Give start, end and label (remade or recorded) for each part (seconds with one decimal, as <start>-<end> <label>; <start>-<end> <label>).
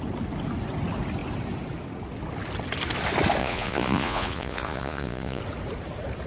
0.0-3.4 recorded; 3.4-5.4 remade; 5.4-6.3 recorded